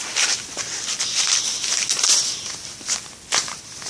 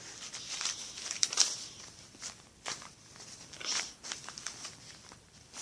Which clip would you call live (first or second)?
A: first